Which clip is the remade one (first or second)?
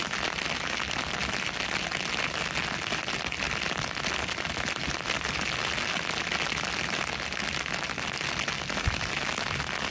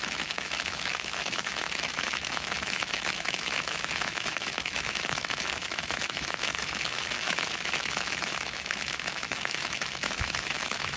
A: second